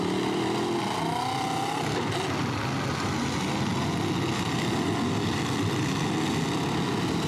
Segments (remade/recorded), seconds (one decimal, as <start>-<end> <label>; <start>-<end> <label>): 0.0-7.3 recorded